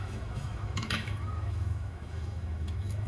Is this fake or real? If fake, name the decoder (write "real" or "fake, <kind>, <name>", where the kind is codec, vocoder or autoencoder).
fake, autoencoder, DAC-VAE